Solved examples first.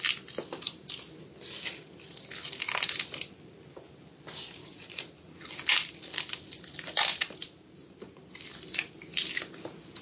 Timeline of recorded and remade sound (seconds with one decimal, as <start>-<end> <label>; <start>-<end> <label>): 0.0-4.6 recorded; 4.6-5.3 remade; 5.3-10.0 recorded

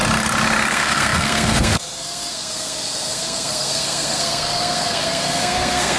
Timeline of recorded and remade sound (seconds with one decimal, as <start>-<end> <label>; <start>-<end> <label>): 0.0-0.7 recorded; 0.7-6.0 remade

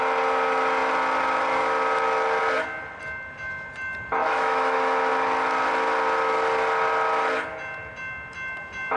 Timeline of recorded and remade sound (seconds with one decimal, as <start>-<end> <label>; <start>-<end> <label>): 0.0-4.2 recorded; 4.2-5.1 remade; 5.1-9.0 recorded